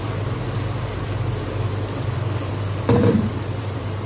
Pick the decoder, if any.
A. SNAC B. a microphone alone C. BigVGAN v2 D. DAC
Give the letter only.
C